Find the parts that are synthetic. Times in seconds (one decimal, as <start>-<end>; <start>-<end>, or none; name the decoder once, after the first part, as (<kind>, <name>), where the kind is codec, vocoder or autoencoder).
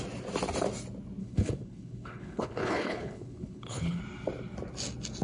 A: 1.2-4.0 (codec, HILCodec)